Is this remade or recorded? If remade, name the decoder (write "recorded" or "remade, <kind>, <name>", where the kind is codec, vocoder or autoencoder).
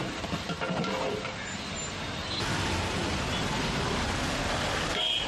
recorded